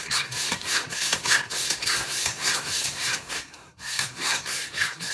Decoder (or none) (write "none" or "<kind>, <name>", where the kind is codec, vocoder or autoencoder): codec, SNAC